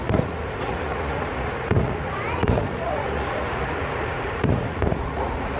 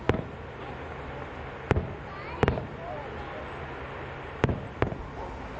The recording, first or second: second